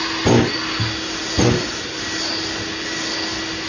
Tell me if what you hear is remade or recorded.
recorded